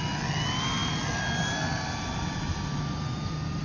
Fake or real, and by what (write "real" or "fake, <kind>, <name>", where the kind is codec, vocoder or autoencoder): real